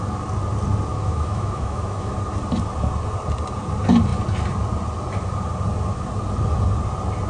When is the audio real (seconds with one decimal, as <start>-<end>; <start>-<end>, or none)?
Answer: 0.0-0.9; 2.1-7.3